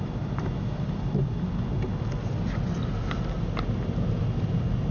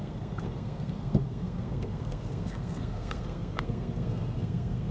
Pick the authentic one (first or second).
first